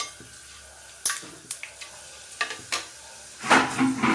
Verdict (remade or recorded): recorded